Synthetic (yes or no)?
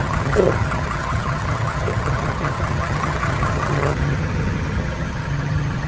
yes